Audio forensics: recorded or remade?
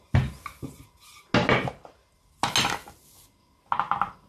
recorded